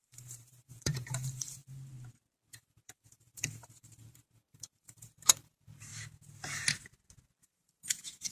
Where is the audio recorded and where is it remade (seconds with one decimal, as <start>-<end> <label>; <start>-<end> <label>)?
0.0-1.6 remade; 1.6-2.5 recorded; 2.5-5.9 remade; 5.9-7.4 recorded; 7.4-8.3 remade

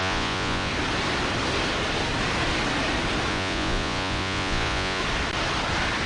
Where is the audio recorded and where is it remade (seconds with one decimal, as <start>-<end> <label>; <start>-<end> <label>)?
0.0-0.7 remade; 0.7-3.3 recorded; 3.3-5.0 remade; 5.0-6.1 recorded

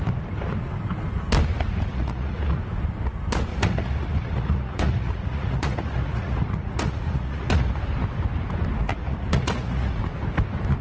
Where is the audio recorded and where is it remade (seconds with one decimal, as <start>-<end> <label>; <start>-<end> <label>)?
0.0-1.9 recorded; 1.9-2.6 remade; 2.6-3.5 recorded; 3.5-7.7 remade; 7.7-8.9 recorded; 8.9-10.0 remade; 10.0-10.8 recorded

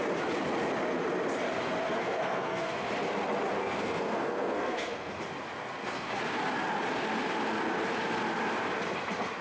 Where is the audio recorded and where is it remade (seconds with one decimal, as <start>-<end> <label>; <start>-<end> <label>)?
0.0-2.0 recorded; 2.0-2.7 remade; 2.7-3.6 recorded; 3.6-5.1 remade; 5.1-5.6 recorded; 5.6-6.1 remade; 6.1-9.4 recorded

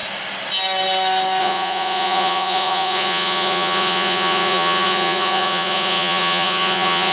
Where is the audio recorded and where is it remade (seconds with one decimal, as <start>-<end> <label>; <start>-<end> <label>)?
0.0-1.4 recorded; 1.4-7.1 remade